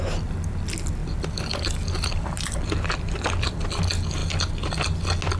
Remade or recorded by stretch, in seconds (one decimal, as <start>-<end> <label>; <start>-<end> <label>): 0.0-1.0 recorded; 1.0-3.8 remade; 3.8-5.4 recorded